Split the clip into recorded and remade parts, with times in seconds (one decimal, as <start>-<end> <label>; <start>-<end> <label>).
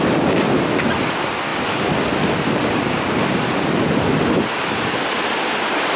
0.0-6.0 recorded